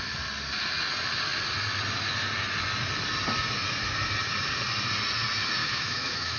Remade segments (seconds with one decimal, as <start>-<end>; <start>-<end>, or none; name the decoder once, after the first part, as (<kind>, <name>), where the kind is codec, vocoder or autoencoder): 5.6-6.4 (autoencoder, DAC-VAE)